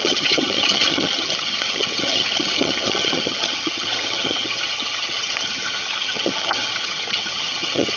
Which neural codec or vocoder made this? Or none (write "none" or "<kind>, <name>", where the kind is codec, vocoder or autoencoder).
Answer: vocoder, HiFi-GAN